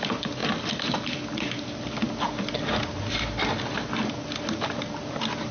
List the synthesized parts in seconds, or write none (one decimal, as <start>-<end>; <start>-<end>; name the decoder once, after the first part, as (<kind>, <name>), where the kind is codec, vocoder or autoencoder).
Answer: none